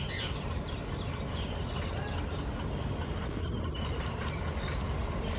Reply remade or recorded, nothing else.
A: recorded